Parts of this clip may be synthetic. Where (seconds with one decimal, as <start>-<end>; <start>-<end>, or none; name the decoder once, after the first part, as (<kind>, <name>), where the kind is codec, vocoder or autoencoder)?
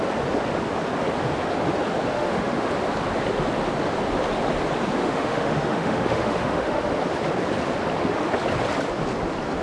2.1-2.7 (autoencoder, DAC-VAE); 5.0-6.9